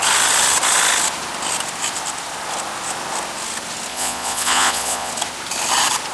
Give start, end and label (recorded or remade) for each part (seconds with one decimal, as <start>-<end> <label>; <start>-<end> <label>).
0.0-3.9 recorded; 3.9-5.1 remade; 5.1-6.1 recorded